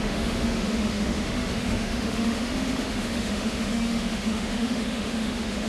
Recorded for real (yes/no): no